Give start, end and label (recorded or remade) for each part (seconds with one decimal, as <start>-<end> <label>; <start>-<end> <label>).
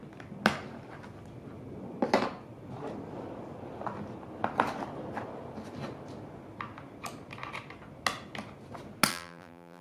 0.0-9.1 recorded; 9.1-9.8 remade